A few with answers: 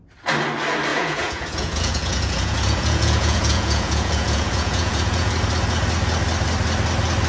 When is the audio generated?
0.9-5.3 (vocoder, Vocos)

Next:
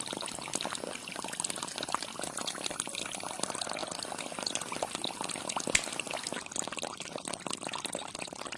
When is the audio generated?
none

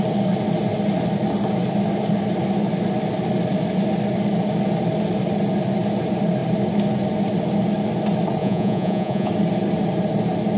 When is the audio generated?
8.4-9.3 (vocoder, Vocos)

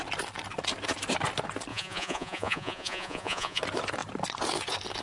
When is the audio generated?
1.7-3.6 (vocoder, Vocos)

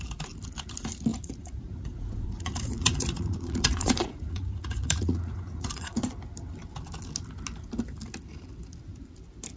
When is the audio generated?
1.1-6.1 (vocoder, Vocos)